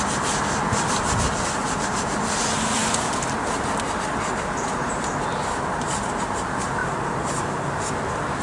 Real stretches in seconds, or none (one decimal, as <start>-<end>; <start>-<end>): 0.0-1.6; 2.4-2.8; 3.6-6.8; 7.9-8.4